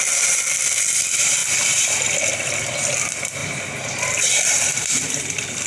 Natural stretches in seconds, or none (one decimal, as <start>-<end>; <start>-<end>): 0.0-1.4; 2.5-3.4; 5.3-5.7